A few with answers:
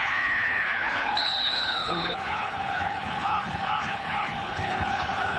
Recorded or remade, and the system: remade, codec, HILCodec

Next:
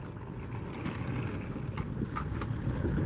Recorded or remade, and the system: recorded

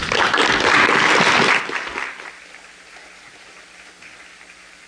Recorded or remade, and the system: recorded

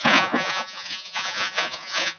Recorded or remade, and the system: remade, vocoder, Vocos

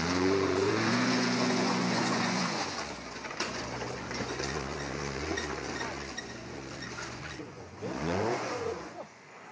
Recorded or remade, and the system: remade, vocoder, Vocos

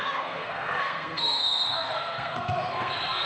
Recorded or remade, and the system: remade, codec, SNAC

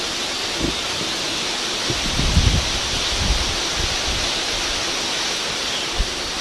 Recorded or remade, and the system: recorded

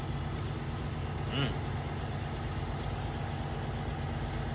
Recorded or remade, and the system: recorded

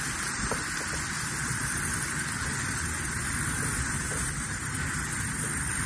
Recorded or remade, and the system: recorded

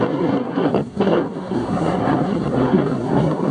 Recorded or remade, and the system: remade, codec, SNAC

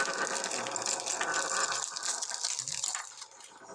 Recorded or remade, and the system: recorded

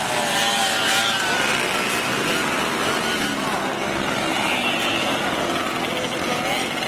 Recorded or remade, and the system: recorded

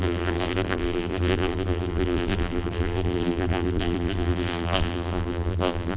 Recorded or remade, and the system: remade, vocoder, BigVGAN v2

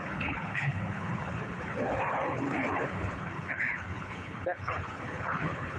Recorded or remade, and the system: remade, codec, HILCodec